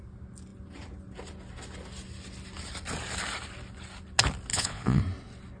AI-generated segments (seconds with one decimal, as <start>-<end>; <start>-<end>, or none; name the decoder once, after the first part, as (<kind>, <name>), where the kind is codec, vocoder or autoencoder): 4.5-5.0 (vocoder, Vocos)